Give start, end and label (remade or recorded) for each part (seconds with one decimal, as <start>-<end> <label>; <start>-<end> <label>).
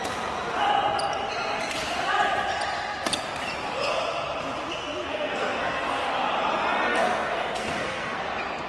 0.0-5.1 recorded; 5.1-6.1 remade; 6.1-6.9 recorded; 6.9-8.2 remade; 8.2-8.7 recorded